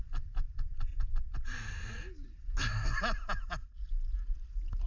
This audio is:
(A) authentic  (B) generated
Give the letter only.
A